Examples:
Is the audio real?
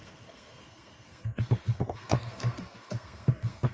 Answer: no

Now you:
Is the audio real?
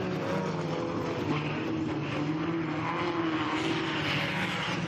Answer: yes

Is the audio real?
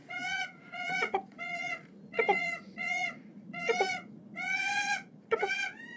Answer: no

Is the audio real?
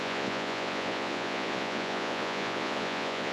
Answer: no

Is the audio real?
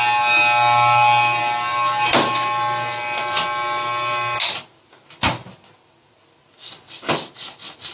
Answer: yes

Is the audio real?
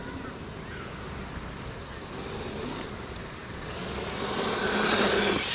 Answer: yes